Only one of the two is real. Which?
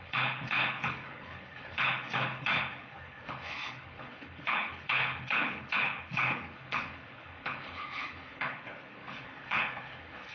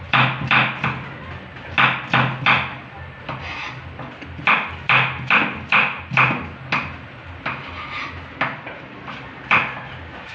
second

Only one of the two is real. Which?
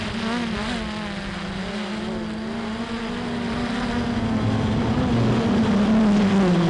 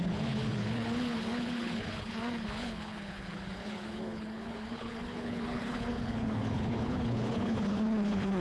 first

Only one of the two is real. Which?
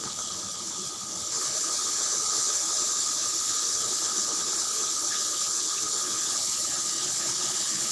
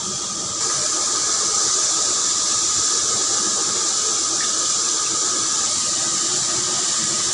second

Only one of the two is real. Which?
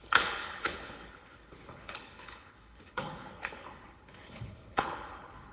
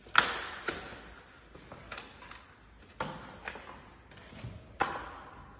second